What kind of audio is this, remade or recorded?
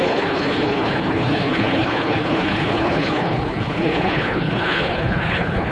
remade